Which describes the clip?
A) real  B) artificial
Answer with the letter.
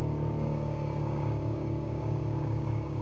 B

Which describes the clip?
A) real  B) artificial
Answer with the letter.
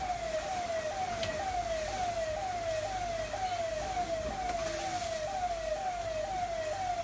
A